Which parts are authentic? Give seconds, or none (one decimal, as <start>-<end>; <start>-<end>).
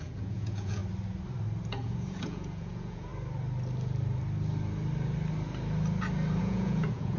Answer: 0.8-1.7; 3.1-6.4